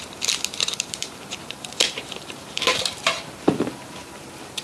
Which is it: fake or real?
fake